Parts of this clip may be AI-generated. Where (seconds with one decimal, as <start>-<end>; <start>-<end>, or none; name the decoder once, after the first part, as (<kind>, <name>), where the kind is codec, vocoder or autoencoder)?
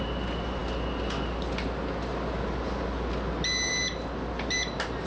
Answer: none